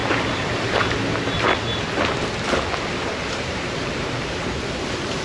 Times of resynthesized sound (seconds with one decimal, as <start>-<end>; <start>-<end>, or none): 0.0-1.5; 3.0-4.6